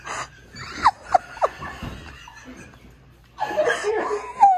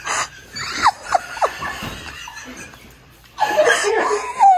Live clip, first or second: first